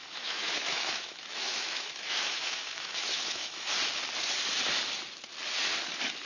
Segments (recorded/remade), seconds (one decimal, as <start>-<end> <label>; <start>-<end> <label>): 0.0-3.7 remade; 3.7-6.2 recorded